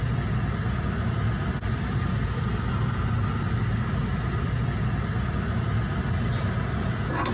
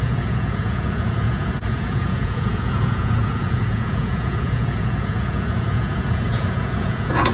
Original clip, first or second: first